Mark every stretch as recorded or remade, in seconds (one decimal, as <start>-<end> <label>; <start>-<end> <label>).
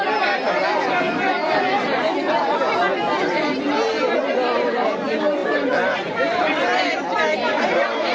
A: 0.0-5.4 recorded; 5.4-7.6 remade; 7.6-8.1 recorded